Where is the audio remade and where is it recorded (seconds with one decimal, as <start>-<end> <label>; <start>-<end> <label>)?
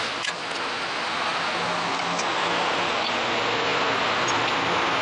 0.0-5.0 recorded